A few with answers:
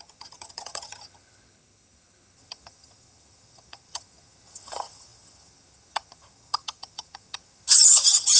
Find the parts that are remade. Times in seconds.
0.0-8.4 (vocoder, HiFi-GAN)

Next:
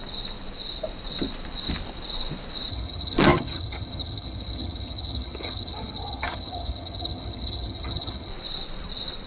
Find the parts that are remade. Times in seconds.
2.7-8.3 (vocoder, HiFi-GAN)

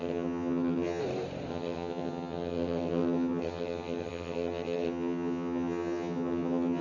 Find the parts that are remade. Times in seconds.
0.0-1.0 (vocoder, HiFi-GAN); 1.5-6.8

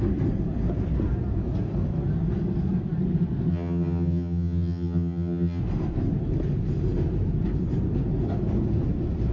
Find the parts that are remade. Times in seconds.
3.5-5.6 (vocoder, HiFi-GAN)